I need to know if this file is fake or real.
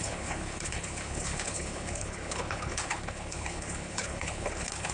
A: fake